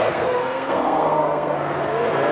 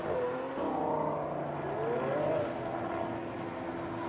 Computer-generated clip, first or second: first